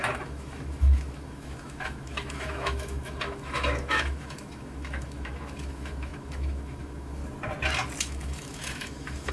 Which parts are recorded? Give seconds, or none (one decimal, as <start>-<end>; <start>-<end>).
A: 7.2-8.0